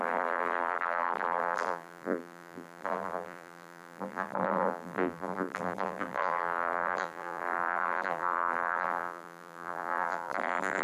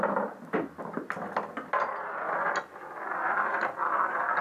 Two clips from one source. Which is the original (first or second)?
second